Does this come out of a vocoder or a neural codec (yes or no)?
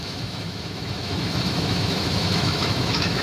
yes